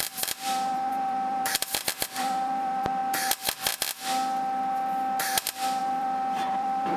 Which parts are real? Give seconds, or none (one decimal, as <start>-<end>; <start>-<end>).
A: 3.0-5.8